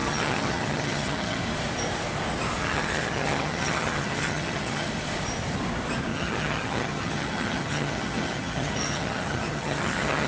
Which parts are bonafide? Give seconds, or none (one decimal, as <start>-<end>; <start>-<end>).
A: 1.4-2.6; 4.9-6.1

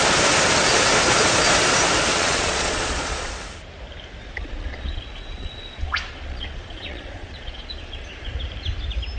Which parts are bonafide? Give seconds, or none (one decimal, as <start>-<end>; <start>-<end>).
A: 0.0-2.1; 3.3-4.2; 8.3-9.2

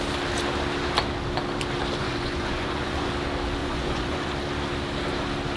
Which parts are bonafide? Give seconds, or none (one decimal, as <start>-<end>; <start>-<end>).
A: 0.0-2.0; 3.1-3.6; 4.3-5.6